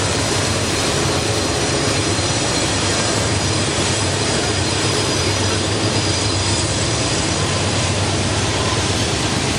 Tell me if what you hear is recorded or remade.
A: remade